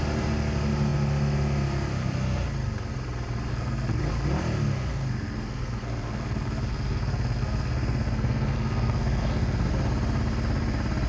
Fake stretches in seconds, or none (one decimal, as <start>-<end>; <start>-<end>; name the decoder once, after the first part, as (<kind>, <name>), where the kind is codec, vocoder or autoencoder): 3.5-4.0 (codec, SNAC); 4.7-9.7